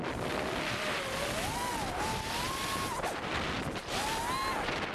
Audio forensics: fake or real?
real